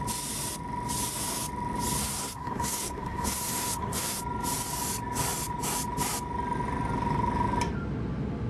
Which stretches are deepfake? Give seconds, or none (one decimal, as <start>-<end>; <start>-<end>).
2.0-4.2